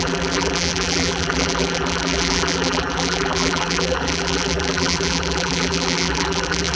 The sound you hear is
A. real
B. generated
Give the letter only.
B